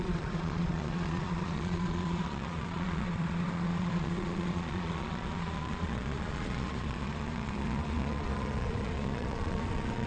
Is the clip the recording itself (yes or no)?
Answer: no